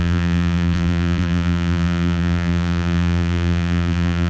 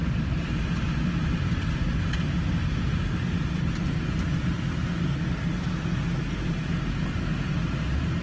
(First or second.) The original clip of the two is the second